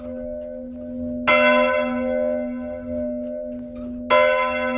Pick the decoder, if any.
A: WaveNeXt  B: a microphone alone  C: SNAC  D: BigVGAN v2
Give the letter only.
B